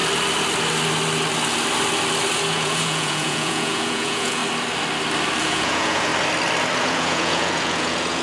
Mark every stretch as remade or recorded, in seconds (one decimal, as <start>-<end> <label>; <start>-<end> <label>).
0.0-2.5 recorded; 2.5-4.4 remade; 4.4-5.4 recorded; 5.4-6.1 remade; 6.1-6.8 recorded; 6.8-8.2 remade